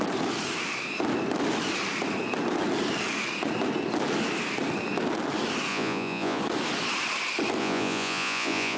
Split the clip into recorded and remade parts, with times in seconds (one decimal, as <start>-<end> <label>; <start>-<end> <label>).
0.0-5.7 recorded; 5.7-6.4 remade; 6.4-7.6 recorded; 7.6-8.8 remade